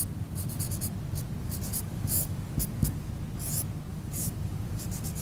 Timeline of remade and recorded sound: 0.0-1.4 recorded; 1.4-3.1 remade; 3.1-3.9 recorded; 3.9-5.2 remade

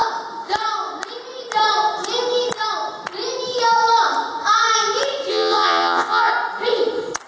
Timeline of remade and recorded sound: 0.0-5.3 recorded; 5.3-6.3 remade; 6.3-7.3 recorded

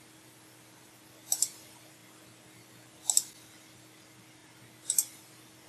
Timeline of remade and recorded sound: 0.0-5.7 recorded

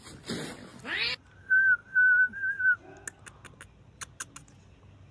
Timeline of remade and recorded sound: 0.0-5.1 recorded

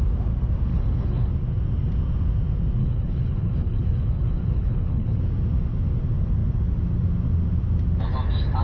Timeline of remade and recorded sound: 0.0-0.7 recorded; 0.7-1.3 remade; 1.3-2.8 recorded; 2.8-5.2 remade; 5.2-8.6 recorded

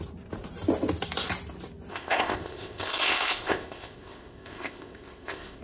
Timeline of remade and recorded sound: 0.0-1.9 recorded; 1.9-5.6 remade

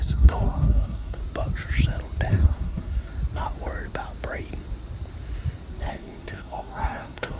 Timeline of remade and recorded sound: 0.0-1.2 remade; 1.2-2.3 recorded; 2.3-3.1 remade; 3.1-5.9 recorded; 5.9-7.4 remade